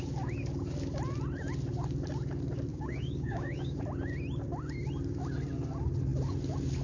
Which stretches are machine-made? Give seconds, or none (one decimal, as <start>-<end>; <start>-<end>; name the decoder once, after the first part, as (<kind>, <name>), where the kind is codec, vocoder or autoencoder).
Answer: 2.7-3.8 (codec, DAC)